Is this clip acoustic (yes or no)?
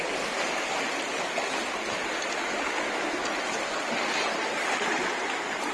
yes